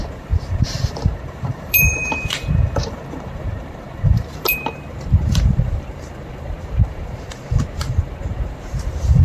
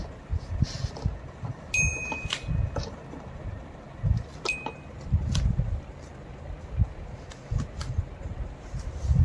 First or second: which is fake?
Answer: first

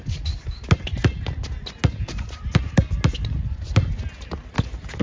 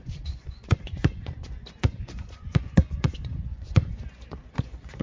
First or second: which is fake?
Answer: second